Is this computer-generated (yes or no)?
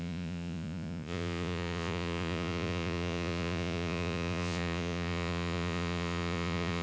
yes